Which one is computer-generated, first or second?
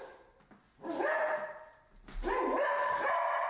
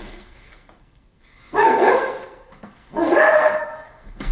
second